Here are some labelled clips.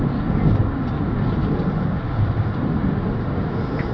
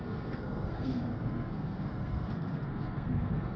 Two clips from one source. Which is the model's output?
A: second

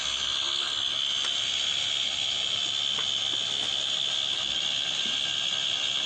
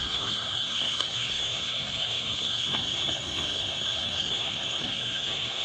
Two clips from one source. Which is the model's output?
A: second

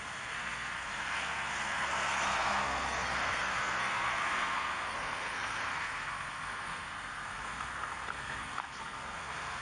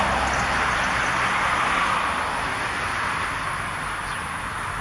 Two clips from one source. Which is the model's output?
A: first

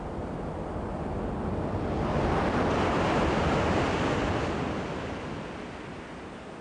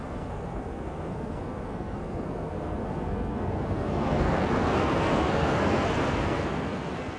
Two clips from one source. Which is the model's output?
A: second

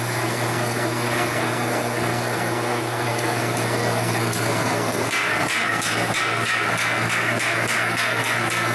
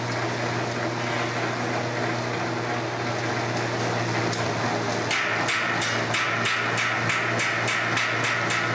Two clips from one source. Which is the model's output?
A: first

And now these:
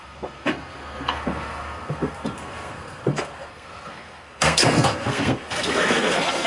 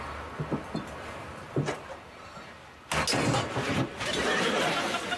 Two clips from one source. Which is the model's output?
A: first